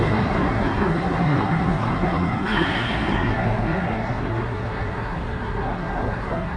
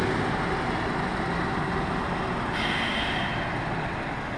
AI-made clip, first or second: first